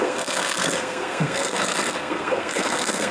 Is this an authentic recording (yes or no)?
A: no